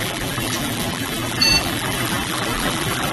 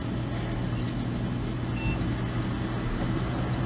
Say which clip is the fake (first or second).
first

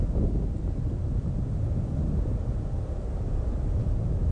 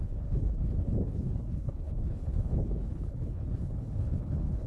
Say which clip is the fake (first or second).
second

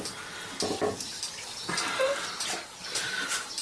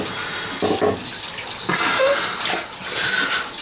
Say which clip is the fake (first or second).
first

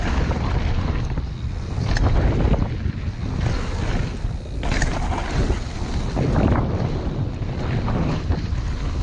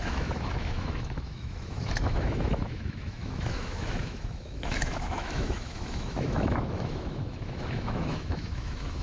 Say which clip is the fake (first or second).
second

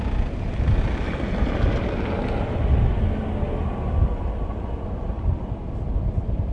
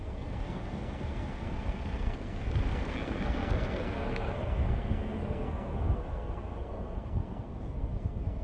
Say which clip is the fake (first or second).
second